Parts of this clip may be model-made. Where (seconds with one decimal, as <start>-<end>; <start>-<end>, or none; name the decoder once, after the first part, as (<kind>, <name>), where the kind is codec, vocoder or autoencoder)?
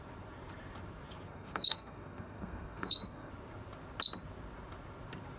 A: 1.3-3.3 (codec, SNAC)